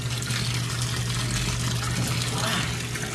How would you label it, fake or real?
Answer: real